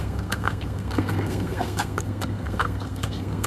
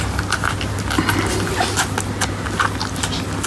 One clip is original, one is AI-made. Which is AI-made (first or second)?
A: first